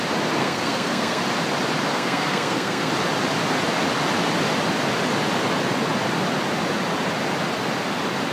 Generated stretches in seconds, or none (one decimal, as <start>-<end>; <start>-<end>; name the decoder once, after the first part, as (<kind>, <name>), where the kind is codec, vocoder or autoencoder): 0.4-1.2 (codec, SNAC); 1.9-2.9